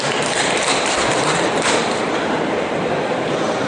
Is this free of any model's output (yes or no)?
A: no